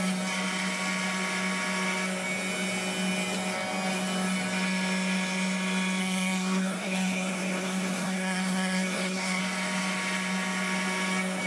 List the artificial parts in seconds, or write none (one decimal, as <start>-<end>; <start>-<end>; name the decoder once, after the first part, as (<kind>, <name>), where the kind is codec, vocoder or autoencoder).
6.0-9.4 (codec, SNAC)